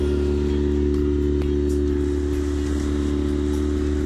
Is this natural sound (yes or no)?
yes